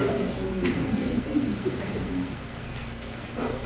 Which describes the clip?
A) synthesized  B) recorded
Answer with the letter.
A